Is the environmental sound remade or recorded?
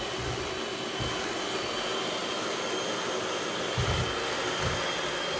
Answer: recorded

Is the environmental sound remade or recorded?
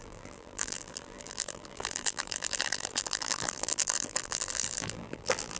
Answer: remade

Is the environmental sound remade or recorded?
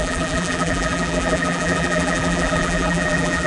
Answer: remade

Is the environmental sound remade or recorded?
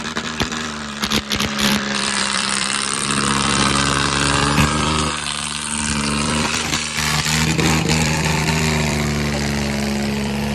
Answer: remade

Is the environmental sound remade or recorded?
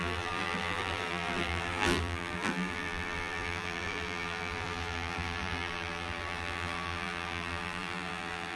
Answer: remade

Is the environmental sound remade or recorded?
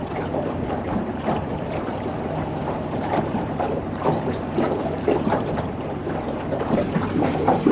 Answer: remade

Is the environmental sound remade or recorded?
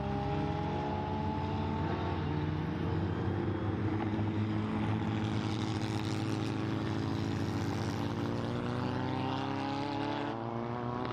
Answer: recorded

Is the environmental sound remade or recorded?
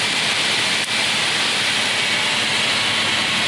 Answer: recorded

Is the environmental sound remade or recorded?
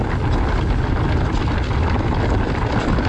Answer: recorded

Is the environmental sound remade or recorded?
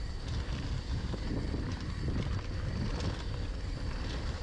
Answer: recorded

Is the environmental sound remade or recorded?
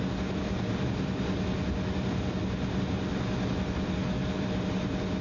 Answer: recorded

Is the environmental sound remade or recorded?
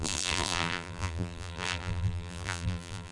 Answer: remade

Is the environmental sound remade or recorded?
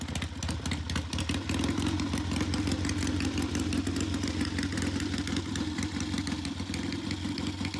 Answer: recorded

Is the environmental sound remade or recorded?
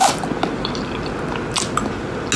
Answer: recorded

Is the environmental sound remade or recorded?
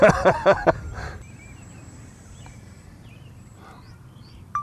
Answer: remade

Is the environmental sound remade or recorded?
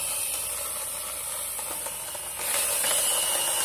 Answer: recorded